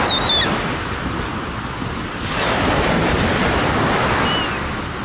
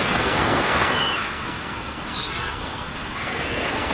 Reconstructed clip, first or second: second